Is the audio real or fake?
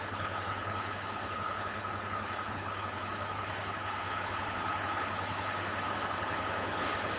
fake